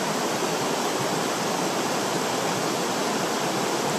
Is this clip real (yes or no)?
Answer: yes